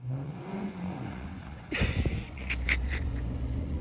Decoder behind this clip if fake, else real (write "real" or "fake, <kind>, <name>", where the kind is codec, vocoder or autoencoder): fake, vocoder, Vocos